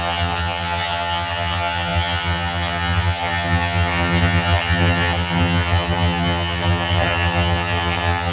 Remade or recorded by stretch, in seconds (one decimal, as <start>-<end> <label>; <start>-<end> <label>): 0.0-8.3 remade

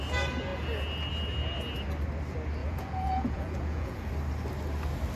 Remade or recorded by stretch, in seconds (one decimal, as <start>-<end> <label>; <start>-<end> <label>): 0.0-2.6 recorded; 2.6-4.1 remade; 4.1-5.2 recorded

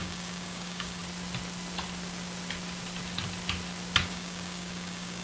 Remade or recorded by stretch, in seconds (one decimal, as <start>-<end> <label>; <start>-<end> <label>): 0.0-1.0 remade; 1.0-4.1 recorded; 4.1-5.2 remade

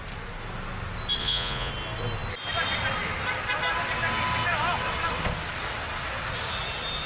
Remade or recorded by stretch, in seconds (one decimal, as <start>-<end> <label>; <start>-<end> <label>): 0.0-1.2 recorded; 1.2-1.7 remade; 1.7-7.1 recorded